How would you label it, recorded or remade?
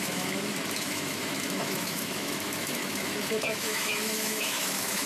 remade